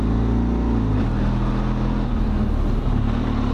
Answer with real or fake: real